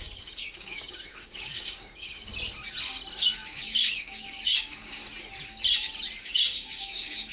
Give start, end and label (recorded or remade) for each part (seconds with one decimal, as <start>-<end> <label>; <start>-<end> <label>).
0.0-2.3 remade; 2.3-3.2 recorded; 3.2-5.0 remade; 5.0-6.2 recorded; 6.2-7.3 remade